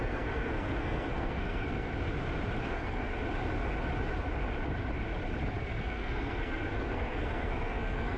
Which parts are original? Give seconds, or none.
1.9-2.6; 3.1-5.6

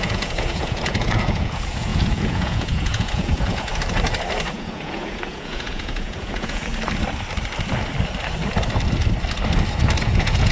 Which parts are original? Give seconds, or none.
3.7-4.5; 6.7-10.0

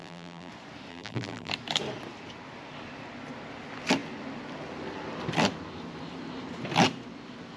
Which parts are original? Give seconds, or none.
0.5-0.9; 1.5-7.6